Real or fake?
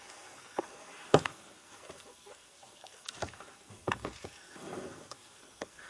fake